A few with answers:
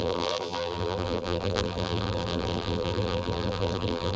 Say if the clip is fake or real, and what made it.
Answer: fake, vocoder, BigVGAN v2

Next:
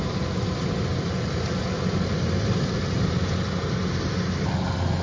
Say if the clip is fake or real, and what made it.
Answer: real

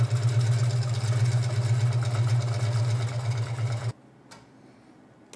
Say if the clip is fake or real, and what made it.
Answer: real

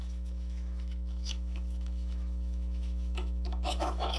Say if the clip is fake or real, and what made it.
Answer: fake, autoencoder, DAC-VAE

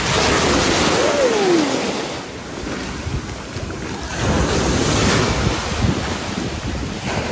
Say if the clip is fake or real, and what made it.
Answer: real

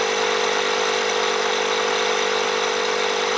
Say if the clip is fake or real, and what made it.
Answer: real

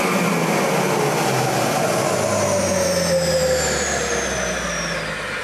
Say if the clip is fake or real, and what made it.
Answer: real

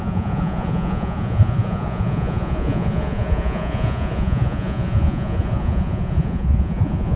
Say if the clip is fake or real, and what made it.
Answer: fake, vocoder, Vocos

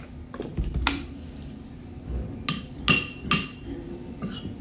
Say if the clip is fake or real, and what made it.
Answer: real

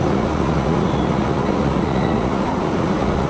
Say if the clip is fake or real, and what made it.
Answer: fake, vocoder, Vocos